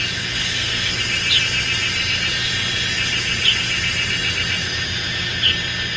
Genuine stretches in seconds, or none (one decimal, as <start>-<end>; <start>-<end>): 0.0-0.4; 1.0-6.0